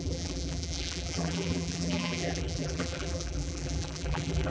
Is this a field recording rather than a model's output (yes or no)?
no